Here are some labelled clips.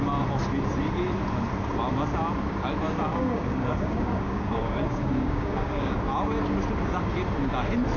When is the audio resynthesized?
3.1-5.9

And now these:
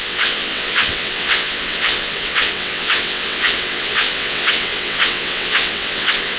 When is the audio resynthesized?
0.0-6.4

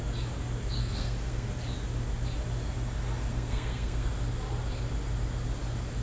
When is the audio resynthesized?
0.8-1.5; 3.3-4.1

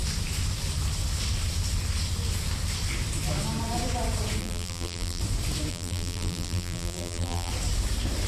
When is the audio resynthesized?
4.4-5.2; 5.7-7.5